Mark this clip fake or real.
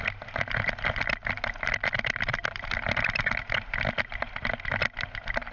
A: real